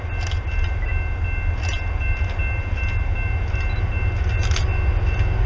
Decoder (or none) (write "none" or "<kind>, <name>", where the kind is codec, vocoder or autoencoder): none